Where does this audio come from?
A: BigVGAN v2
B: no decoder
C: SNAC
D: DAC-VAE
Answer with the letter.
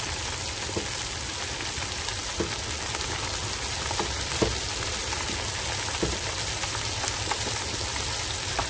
B